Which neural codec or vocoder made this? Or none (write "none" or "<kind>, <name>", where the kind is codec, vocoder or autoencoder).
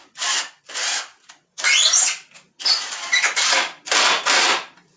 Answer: none